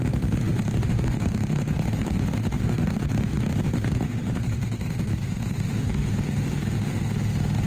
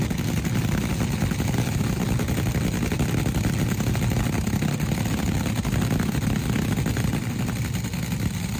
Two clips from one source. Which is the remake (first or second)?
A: first